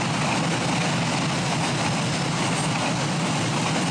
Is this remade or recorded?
recorded